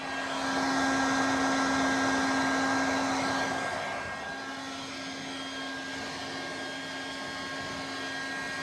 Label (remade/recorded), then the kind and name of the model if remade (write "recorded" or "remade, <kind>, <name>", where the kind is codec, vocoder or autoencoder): recorded